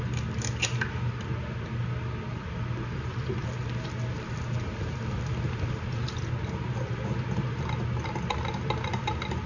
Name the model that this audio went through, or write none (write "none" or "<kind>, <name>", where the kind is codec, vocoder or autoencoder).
none